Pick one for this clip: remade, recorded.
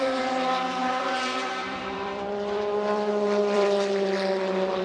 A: remade